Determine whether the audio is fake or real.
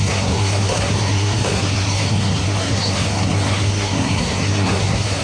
fake